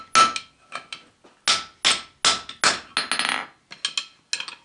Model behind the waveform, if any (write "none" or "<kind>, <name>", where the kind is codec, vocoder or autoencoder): none